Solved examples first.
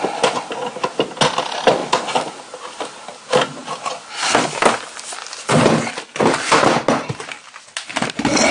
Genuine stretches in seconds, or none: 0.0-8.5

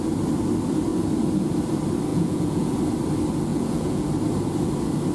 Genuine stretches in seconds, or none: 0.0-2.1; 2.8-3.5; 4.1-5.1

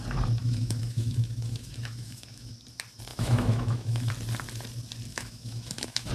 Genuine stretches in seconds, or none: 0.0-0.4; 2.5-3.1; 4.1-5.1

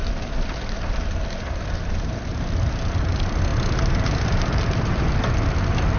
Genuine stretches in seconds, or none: 0.0-6.0